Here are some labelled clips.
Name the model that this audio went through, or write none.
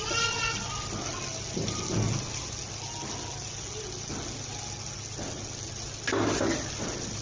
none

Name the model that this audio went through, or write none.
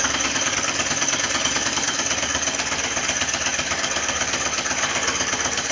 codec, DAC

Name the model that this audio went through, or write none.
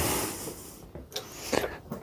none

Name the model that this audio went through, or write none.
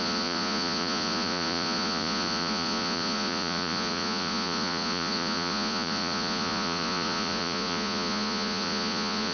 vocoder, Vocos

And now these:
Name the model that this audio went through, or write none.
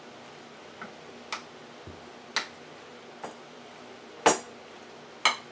none